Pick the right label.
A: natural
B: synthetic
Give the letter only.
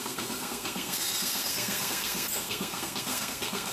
B